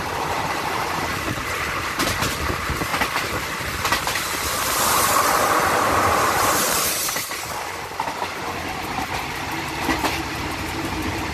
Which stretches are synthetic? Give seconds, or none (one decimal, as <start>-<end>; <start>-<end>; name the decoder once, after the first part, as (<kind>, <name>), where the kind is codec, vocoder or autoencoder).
0.0-2.9 (vocoder, BigVGAN v2); 4.8-7.0; 9.6-11.3